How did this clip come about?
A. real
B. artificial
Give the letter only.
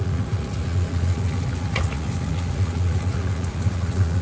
B